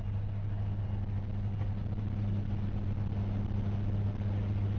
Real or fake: real